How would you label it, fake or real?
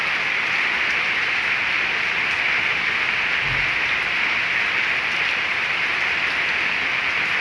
real